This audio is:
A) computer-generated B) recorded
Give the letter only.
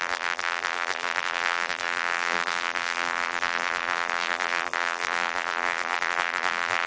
A